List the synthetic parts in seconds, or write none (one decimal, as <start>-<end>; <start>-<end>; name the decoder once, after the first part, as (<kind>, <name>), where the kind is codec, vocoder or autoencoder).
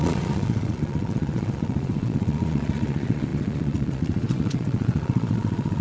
0.0-5.8 (vocoder, Vocos)